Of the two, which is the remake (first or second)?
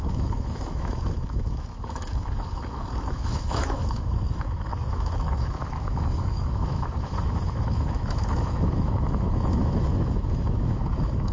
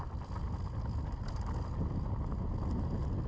first